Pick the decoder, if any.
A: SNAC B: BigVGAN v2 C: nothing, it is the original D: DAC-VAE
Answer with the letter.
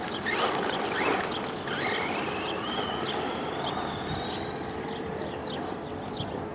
B